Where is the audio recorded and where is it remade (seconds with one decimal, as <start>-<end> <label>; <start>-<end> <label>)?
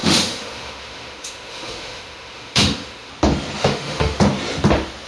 0.0-3.1 remade; 3.1-3.6 recorded; 3.6-4.2 remade; 4.2-5.1 recorded